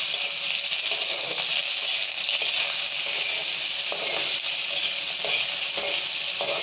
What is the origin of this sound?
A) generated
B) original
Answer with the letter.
B